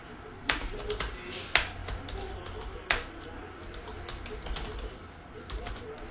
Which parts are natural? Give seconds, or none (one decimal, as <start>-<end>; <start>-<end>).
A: 0.0-6.1